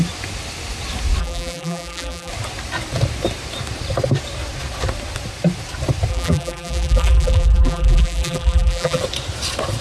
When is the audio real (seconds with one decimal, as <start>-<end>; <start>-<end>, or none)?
0.0-1.2; 2.3-6.1; 9.0-9.8